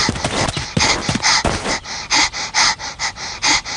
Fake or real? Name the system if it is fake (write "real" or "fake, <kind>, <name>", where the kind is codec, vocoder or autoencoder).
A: real